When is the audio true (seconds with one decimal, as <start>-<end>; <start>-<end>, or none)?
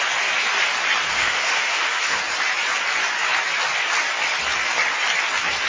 0.0-1.1; 2.2-5.7